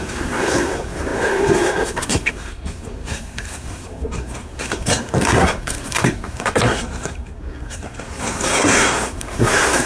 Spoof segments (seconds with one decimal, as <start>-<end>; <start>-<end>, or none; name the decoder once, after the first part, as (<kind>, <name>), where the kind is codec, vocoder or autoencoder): 0.0-9.9 (codec, SNAC)